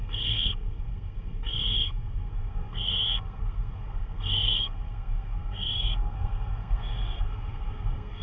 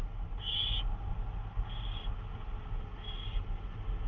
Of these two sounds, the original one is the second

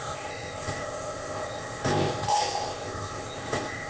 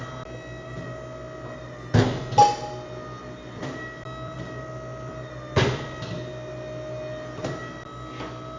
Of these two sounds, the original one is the second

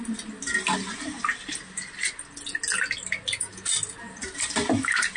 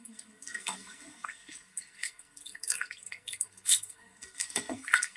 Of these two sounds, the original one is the first